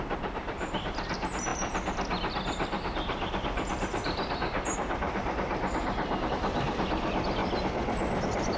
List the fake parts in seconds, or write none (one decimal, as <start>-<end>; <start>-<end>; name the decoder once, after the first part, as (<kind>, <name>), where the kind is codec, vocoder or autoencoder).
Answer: 0.4-1.1 (vocoder, BigVGAN v2); 1.5-6.3